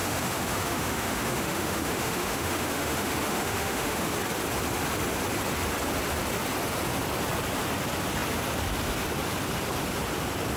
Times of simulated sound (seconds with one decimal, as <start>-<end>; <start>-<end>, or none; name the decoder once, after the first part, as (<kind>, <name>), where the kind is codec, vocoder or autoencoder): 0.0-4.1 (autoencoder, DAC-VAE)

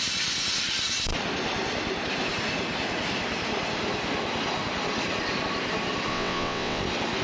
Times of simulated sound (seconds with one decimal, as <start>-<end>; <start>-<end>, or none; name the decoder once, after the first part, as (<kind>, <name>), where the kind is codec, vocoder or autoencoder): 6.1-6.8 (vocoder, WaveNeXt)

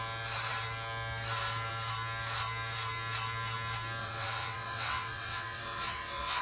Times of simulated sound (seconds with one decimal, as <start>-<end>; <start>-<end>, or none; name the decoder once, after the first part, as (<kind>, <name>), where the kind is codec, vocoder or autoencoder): 4.0-6.4 (vocoder, WaveNeXt)

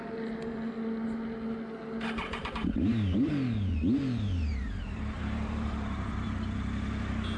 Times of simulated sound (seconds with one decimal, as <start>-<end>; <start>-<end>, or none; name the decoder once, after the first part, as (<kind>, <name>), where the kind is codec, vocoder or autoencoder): 2.4-3.3 (vocoder, BigVGAN v2); 4.5-6.3

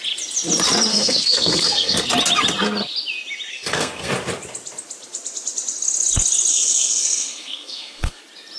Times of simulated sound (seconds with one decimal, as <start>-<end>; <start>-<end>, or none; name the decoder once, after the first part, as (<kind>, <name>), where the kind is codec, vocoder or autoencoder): 0.9-2.1 (codec, SNAC); 3.5-4.1; 6.5-8.2